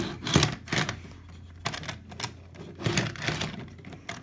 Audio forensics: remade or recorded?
recorded